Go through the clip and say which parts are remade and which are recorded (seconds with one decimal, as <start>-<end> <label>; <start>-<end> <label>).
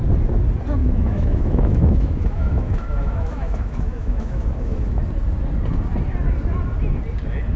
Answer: 0.0-0.8 recorded; 0.8-5.0 remade; 5.0-7.6 recorded